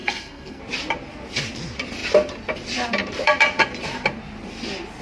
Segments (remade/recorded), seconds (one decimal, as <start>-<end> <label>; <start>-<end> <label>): 0.0-0.6 remade; 0.6-5.0 recorded